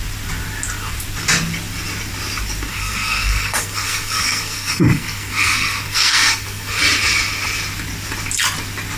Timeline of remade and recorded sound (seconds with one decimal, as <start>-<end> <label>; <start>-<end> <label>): 0.0-2.7 recorded; 2.7-6.8 remade; 6.8-9.0 recorded